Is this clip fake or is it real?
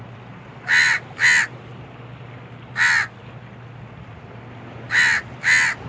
real